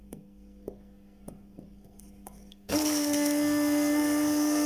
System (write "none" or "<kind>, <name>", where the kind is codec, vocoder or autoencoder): codec, SNAC